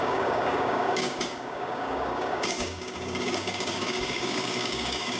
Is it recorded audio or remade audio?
remade